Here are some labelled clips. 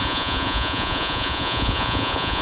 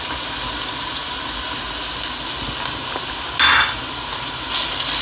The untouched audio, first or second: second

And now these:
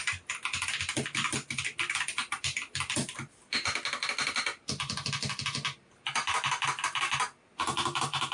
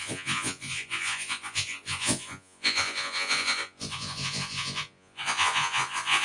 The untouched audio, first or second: first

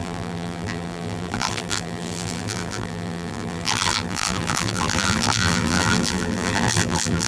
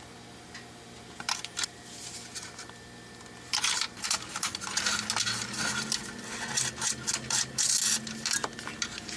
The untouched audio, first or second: second